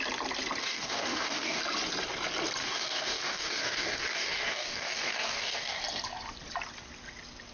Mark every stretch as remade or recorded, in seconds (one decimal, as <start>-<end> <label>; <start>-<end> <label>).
0.0-0.6 recorded; 0.6-1.6 remade; 1.6-2.6 recorded; 2.6-5.8 remade; 5.8-7.5 recorded